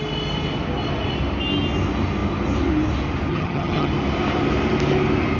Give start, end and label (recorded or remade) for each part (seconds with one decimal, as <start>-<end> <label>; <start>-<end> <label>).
0.0-3.3 recorded; 3.3-3.9 remade; 3.9-5.4 recorded